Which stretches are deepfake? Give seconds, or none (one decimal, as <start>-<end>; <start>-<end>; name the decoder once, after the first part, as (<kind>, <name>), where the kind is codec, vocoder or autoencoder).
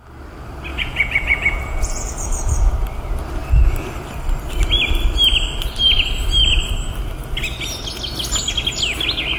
0.7-2.7 (vocoder, Vocos)